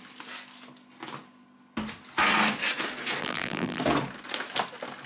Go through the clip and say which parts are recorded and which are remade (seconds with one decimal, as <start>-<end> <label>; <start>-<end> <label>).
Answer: 0.0-3.2 recorded; 3.2-3.8 remade; 3.8-5.1 recorded